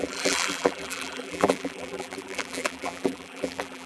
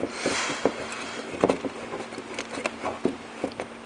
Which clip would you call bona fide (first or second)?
second